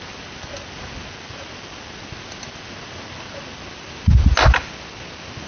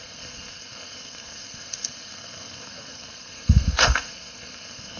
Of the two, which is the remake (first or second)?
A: second